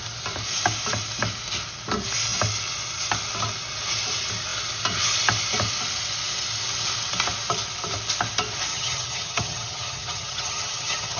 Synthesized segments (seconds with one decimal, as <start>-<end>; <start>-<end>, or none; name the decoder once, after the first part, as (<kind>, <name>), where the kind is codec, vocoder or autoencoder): 8.7-11.2 (vocoder, HiFi-GAN)